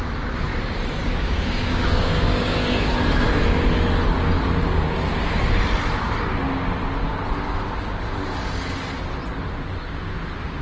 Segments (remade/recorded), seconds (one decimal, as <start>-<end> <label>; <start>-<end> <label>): 0.0-1.0 recorded; 1.0-2.9 remade; 2.9-10.6 recorded